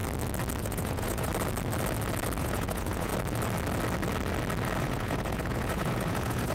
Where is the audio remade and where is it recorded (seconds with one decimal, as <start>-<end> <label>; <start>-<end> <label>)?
0.0-0.6 recorded; 0.6-1.3 remade; 1.3-2.4 recorded; 2.4-3.1 remade; 3.1-4.8 recorded; 4.8-6.5 remade